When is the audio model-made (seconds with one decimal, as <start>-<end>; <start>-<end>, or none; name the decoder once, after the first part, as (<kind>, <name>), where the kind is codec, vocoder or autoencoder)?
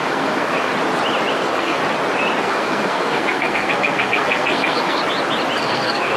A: 0.0-0.7 (codec, SNAC); 1.3-1.8; 2.4-5.0; 5.6-6.2